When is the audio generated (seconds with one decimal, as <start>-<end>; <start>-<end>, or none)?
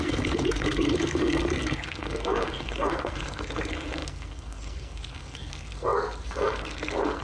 0.0-7.2